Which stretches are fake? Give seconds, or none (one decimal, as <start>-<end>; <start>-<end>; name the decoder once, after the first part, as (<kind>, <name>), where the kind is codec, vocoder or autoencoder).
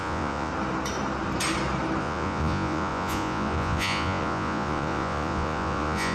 0.0-0.5 (vocoder, Vocos); 2.0-6.1